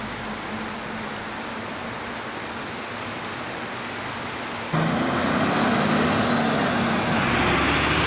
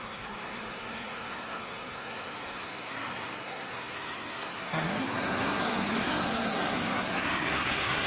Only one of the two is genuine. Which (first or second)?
first